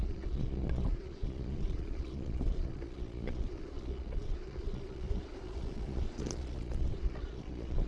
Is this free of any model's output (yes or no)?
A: no